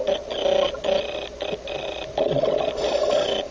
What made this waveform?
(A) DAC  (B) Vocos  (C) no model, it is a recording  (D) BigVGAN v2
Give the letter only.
C